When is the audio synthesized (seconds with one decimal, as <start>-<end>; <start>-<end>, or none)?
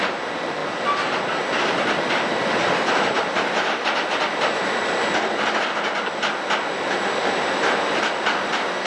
none